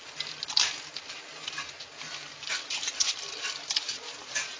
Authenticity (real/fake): real